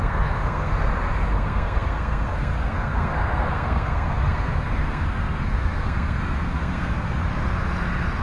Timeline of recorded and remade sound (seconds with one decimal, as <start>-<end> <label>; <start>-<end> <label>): 0.0-0.7 remade; 0.7-1.3 recorded; 1.3-7.2 remade; 7.2-8.2 recorded